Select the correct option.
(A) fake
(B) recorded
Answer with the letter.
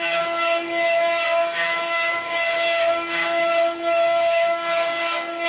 A